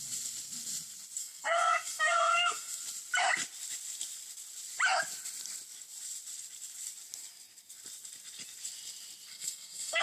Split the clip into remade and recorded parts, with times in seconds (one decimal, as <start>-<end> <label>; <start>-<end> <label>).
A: 0.0-1.2 recorded; 1.2-2.8 remade; 2.8-9.3 recorded; 9.3-10.0 remade